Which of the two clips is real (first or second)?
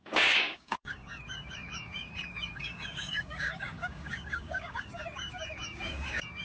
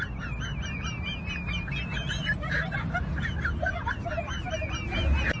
second